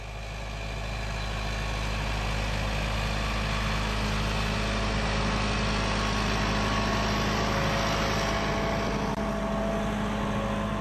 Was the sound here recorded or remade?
recorded